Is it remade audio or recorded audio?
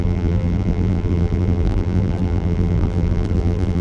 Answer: remade